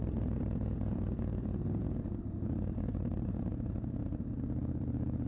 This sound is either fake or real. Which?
fake